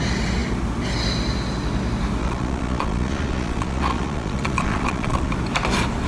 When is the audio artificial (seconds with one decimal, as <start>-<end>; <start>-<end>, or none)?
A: 2.2-5.3